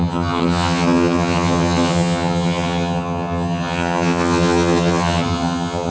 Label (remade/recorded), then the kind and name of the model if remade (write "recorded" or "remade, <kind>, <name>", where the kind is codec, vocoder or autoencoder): remade, vocoder, HiFi-GAN